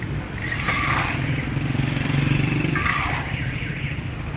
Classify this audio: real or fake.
fake